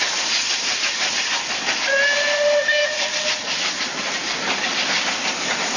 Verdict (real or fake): real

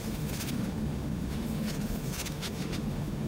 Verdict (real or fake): fake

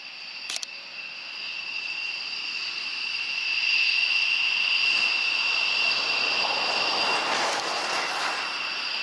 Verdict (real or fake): real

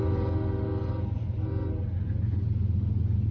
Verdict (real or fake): real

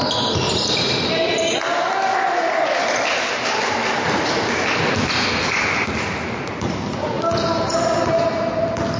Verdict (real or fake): real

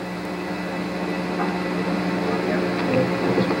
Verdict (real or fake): real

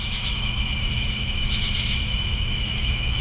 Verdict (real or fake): fake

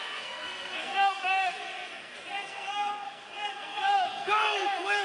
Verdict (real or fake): fake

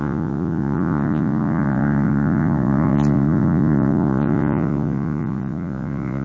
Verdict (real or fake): fake